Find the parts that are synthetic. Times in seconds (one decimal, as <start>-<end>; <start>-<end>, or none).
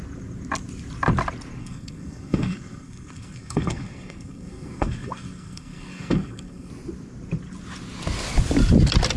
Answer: 1.6-6.7